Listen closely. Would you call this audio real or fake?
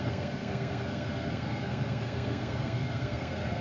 fake